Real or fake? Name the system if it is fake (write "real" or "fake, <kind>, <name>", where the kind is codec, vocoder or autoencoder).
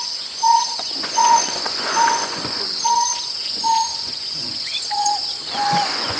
fake, vocoder, Vocos